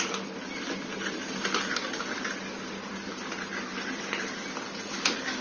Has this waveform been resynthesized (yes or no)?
no